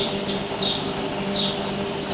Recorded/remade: recorded